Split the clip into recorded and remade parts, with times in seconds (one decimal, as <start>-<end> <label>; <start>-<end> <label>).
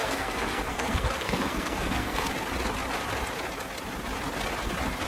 0.0-2.3 remade; 2.3-5.1 recorded